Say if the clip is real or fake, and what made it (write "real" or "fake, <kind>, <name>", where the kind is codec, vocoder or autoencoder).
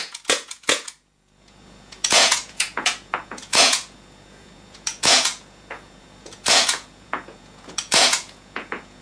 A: fake, vocoder, Vocos